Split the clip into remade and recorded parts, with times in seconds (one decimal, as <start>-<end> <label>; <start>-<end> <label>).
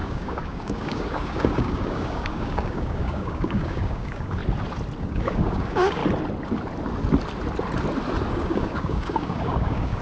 0.0-4.4 remade; 4.4-5.0 recorded; 5.0-6.0 remade; 6.0-8.3 recorded; 8.3-10.0 remade